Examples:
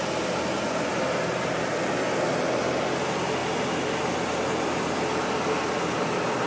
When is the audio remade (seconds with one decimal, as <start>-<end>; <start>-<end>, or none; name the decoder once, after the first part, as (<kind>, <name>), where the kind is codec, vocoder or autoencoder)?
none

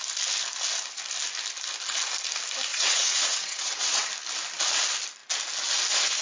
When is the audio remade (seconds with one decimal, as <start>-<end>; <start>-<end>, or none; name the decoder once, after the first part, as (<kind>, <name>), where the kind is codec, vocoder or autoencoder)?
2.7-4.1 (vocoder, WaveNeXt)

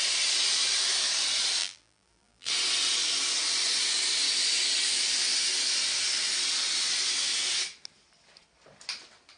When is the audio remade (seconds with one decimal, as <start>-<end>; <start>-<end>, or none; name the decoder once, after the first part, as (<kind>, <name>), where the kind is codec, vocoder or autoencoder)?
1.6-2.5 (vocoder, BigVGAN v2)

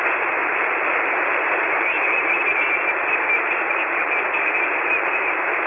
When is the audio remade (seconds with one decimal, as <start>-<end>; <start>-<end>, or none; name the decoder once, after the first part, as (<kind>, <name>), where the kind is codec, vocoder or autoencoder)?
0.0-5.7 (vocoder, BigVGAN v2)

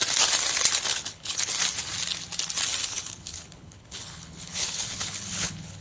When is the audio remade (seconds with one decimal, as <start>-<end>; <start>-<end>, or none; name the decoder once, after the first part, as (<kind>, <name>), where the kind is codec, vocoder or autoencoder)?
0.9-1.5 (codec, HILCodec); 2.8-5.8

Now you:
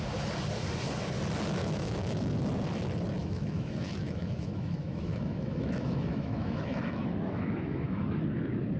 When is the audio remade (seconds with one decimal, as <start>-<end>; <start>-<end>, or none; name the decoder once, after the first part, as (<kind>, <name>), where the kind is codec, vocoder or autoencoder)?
1.6-2.4 (autoencoder, DAC-VAE); 3.2-8.2

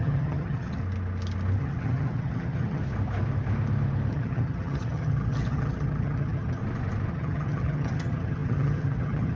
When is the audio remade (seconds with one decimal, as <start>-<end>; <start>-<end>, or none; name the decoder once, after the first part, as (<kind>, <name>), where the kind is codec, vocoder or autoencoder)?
0.0-0.8 (vocoder, HiFi-GAN); 1.6-2.8; 4.1-6.6; 7.1-9.4

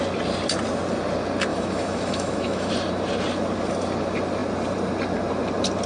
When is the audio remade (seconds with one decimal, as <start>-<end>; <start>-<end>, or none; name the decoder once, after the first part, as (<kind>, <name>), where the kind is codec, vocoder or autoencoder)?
1.5-2.7 (autoencoder, DAC-VAE)